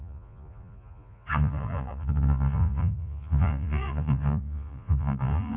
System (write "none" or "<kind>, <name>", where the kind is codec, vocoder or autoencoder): vocoder, Vocos